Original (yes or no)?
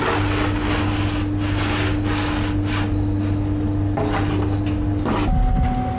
yes